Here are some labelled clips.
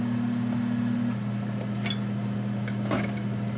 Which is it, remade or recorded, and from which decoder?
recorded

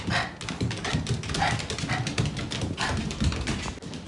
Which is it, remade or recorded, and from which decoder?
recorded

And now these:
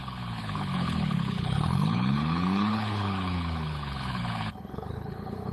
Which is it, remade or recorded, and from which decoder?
remade, codec, HILCodec